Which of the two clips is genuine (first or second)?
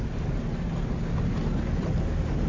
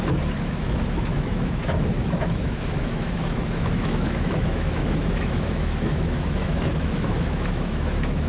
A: first